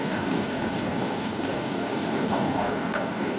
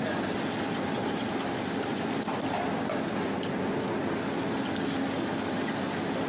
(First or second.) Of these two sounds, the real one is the second